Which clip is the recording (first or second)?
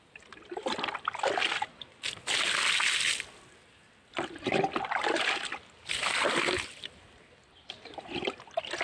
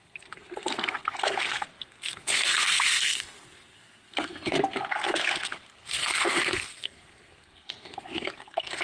first